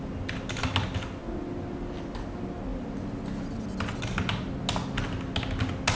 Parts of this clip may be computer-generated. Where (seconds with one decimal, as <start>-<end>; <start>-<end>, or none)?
none